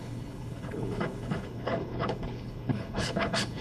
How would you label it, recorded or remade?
remade